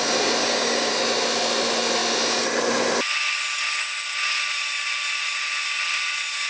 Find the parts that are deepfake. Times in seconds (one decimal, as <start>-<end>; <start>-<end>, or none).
0.4-0.9